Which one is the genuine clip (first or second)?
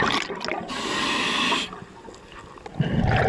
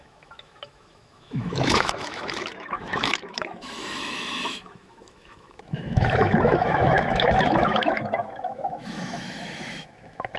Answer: first